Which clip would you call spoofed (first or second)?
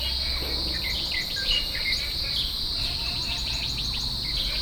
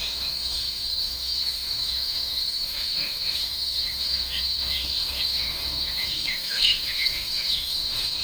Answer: second